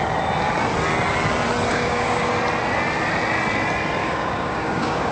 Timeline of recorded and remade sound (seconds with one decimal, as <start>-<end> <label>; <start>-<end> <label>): 0.0-1.7 recorded; 1.7-2.3 remade; 2.3-4.0 recorded; 4.0-5.1 remade